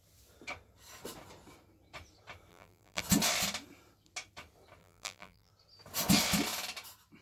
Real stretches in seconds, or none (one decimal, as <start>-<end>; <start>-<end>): 0.0-2.5; 3.0-4.8; 5.5-7.2